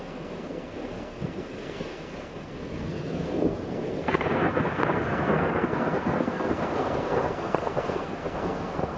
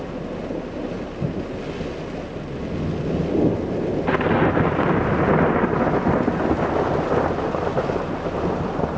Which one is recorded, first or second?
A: second